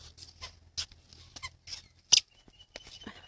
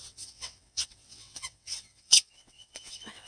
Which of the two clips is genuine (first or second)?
first